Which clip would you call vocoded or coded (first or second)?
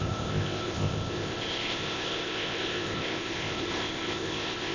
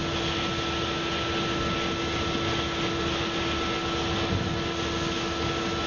first